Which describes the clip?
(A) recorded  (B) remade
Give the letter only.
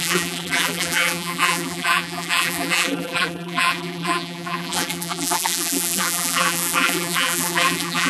B